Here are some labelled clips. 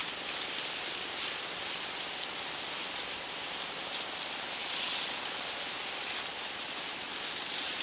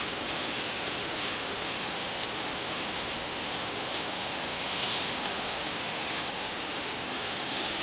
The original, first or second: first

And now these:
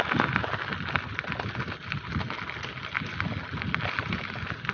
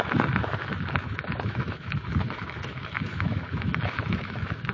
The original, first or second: first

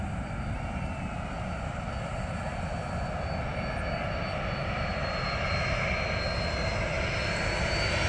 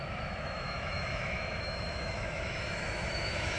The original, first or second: first